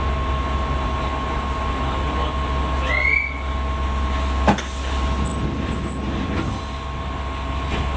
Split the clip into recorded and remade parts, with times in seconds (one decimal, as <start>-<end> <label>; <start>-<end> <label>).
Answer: 0.0-8.0 recorded